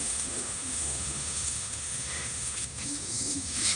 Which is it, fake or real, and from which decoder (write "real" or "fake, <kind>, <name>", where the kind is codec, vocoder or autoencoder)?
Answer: fake, autoencoder, DAC-VAE